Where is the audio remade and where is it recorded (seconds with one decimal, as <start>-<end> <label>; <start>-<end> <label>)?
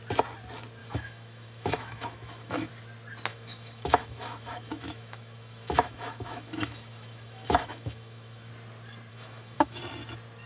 0.0-0.8 recorded; 0.8-2.7 remade; 2.7-3.3 recorded; 3.3-8.5 remade; 8.5-9.1 recorded; 9.1-9.8 remade; 9.8-10.5 recorded